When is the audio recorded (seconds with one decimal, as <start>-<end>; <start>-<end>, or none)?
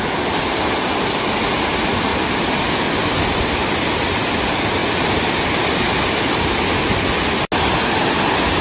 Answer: 0.0-4.8; 5.4-8.6